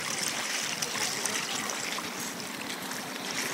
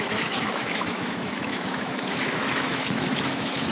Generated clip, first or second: second